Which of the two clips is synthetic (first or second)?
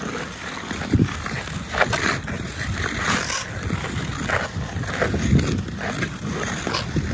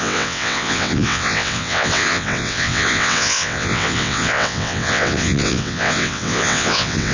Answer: second